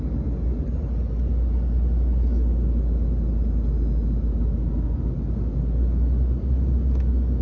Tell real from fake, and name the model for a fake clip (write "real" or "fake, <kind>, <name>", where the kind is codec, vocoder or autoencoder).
real